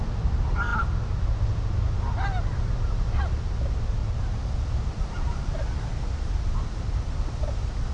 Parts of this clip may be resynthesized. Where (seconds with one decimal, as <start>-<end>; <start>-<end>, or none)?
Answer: 5.9-7.2